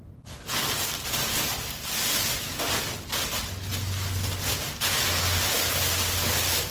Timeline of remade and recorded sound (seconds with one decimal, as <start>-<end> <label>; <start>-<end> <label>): 0.0-6.7 recorded